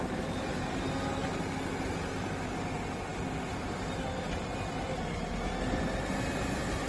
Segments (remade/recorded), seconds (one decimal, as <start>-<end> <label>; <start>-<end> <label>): 0.0-6.9 recorded